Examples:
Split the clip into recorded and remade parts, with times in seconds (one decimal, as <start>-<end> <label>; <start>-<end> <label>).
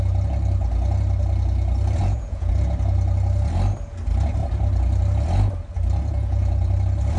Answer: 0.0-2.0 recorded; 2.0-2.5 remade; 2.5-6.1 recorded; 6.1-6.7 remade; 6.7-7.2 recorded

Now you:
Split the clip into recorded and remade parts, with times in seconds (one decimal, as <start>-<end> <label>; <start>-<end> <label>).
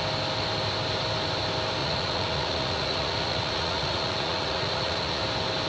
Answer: 0.0-1.8 recorded; 1.8-5.2 remade; 5.2-5.7 recorded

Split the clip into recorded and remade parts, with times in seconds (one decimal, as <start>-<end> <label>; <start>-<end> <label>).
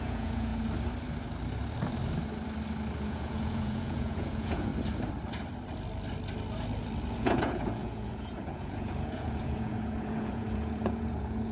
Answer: 0.0-0.5 remade; 0.5-3.0 recorded; 3.0-4.7 remade; 4.7-7.1 recorded; 7.1-11.5 remade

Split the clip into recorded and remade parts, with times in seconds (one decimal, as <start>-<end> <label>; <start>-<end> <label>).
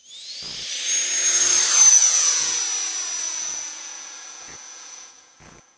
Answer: 0.0-1.9 recorded; 1.9-2.6 remade; 2.6-3.2 recorded; 3.2-5.8 remade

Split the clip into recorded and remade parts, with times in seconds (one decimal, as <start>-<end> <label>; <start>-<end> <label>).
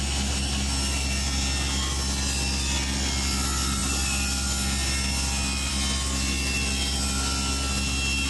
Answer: 0.0-8.3 recorded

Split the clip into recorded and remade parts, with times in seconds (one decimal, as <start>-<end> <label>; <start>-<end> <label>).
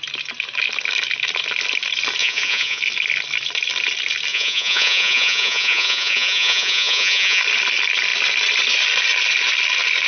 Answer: 0.0-2.2 recorded; 2.2-2.8 remade; 2.8-4.3 recorded; 4.3-7.4 remade; 7.4-10.1 recorded